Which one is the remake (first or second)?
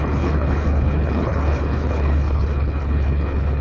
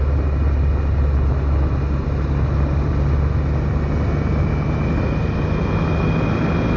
first